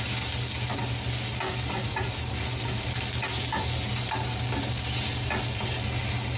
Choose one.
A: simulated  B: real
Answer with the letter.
B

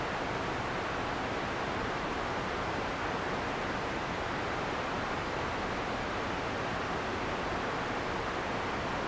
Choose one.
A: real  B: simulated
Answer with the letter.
A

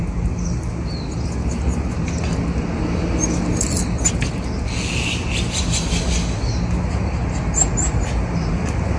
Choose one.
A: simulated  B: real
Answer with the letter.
B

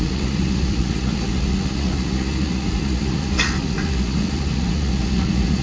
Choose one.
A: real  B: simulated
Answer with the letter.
B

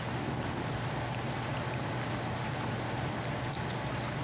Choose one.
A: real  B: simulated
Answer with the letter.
A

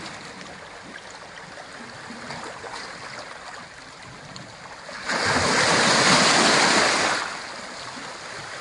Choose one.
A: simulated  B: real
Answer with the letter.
B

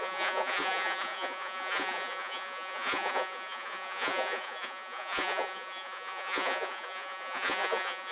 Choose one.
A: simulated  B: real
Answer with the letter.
A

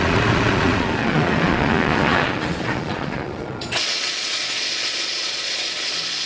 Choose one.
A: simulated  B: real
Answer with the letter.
A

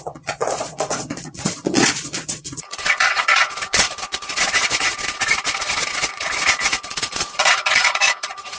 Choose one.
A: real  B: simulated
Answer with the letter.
B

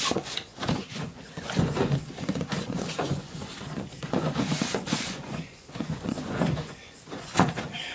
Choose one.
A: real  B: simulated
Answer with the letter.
B